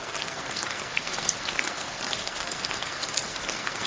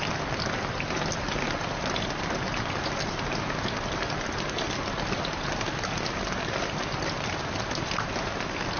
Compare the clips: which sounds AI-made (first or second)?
first